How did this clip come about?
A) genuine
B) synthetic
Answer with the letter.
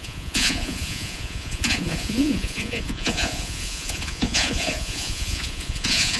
B